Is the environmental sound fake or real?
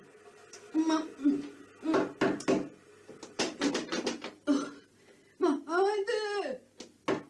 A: real